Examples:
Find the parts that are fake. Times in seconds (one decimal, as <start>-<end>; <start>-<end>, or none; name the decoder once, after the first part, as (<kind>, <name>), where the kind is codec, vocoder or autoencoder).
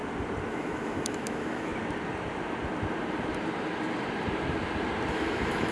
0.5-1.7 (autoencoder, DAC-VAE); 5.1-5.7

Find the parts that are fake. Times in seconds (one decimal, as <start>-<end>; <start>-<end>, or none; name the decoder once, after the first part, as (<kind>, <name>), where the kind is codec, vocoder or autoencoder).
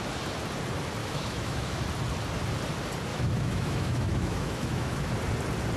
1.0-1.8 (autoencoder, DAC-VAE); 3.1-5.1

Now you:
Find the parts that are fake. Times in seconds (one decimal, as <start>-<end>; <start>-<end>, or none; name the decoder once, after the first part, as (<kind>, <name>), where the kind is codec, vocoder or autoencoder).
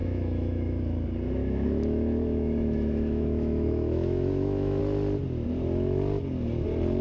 0.0-0.8 (autoencoder, DAC-VAE); 1.4-4.8